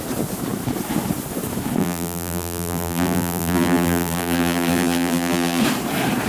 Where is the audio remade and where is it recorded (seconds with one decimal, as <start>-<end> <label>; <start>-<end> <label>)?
0.0-1.8 recorded; 1.8-5.6 remade; 5.6-6.3 recorded